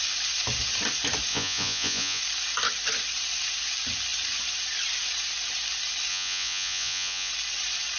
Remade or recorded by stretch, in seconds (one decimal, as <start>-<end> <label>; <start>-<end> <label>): 0.0-1.3 recorded; 1.3-2.2 remade; 2.2-6.1 recorded; 6.1-7.3 remade; 7.3-8.0 recorded